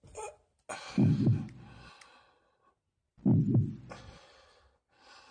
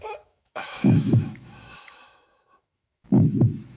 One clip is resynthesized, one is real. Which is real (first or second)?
first